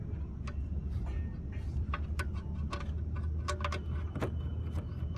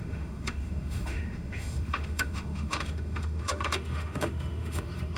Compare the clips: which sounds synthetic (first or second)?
second